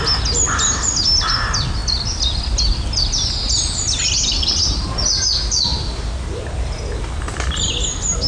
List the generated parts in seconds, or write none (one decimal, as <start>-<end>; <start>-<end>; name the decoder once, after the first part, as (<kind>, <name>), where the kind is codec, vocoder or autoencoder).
none